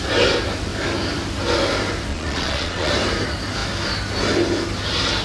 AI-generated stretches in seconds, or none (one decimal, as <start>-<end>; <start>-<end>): 2.1-2.9